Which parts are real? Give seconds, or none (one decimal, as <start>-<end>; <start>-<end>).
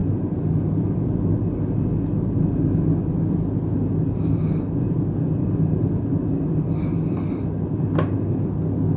0.0-9.0